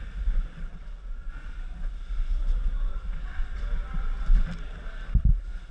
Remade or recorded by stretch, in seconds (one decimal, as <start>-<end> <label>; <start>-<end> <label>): 0.0-0.7 recorded; 0.7-1.3 remade; 1.3-2.9 recorded; 2.9-3.6 remade; 3.6-5.7 recorded